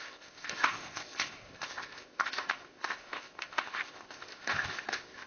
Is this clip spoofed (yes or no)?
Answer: yes